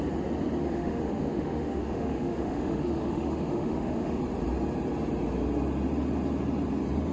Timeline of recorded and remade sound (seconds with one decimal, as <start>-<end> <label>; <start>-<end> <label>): 0.0-0.6 recorded; 0.6-4.2 remade; 4.2-7.1 recorded